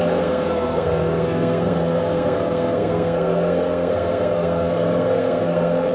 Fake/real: fake